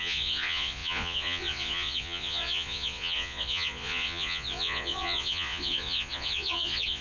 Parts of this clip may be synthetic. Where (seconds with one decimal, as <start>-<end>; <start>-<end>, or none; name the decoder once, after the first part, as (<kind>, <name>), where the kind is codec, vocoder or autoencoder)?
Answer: 0.0-7.0 (vocoder, Vocos)